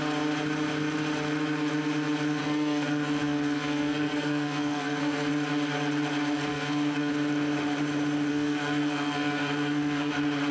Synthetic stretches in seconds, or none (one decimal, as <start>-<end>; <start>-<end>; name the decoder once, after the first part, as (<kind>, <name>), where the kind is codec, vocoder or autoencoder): 2.4-5.3 (codec, SNAC); 6.5-7.1; 8.3-10.1

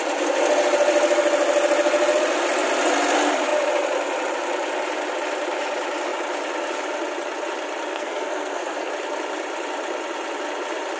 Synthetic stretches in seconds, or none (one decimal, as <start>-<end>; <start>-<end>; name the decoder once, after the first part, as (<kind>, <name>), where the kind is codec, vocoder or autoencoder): 7.9-8.9 (codec, SNAC)

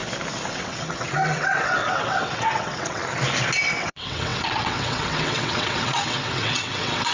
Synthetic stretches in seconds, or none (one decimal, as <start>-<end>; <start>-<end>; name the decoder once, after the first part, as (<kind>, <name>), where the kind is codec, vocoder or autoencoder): 0.5-3.0 (vocoder, WaveNeXt); 3.8-7.1

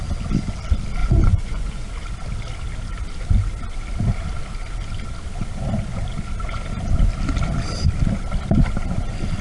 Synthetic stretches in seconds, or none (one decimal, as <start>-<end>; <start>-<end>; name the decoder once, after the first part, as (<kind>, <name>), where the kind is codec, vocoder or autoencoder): 1.0-1.9 (vocoder, Vocos)

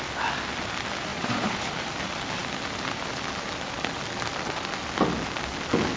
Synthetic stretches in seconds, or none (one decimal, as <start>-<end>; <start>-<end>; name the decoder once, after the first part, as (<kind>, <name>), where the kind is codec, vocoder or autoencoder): 1.1-1.9 (vocoder, BigVGAN v2)

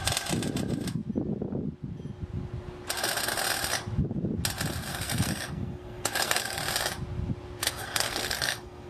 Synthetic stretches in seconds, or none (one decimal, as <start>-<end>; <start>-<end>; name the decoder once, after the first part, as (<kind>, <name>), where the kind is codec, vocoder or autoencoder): 4.9-6.6 (codec, SNAC); 7.6-8.9

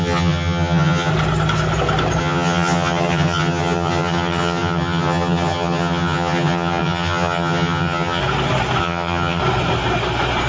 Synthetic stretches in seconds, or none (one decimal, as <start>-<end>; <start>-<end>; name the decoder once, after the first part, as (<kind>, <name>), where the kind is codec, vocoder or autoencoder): 0.0-1.1 (vocoder, HiFi-GAN); 2.2-8.2; 8.8-9.4